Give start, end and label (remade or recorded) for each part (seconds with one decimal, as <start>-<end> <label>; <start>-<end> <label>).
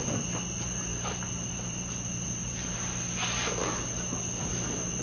0.0-0.9 recorded; 0.9-2.9 remade; 2.9-3.6 recorded; 3.6-4.2 remade; 4.2-5.0 recorded